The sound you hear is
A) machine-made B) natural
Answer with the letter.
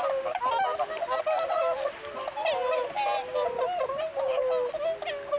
B